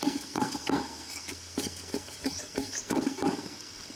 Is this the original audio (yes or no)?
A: no